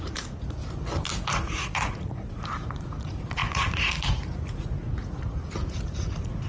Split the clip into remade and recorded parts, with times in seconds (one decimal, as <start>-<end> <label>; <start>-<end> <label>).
0.0-0.6 remade; 0.6-1.3 recorded; 1.3-6.5 remade